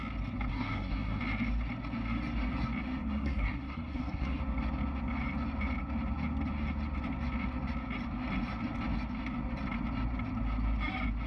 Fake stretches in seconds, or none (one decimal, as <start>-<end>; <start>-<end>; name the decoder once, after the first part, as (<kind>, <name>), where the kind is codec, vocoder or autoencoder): 0.5-1.2 (codec, SNAC); 3.0-4.4